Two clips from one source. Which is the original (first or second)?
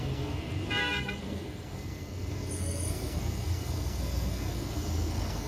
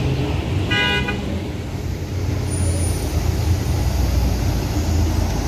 second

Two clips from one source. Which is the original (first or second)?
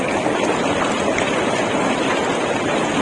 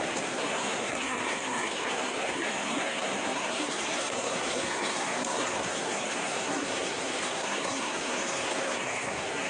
first